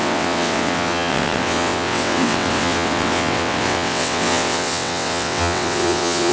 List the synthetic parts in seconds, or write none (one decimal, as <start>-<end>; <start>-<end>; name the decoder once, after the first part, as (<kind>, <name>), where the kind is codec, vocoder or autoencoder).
0.0-6.3 (vocoder, WaveNeXt)